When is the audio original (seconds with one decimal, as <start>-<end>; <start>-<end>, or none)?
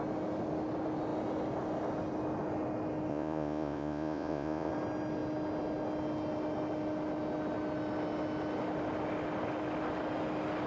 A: 0.0-3.1; 4.7-10.7